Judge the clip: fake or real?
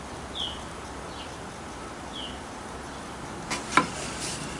real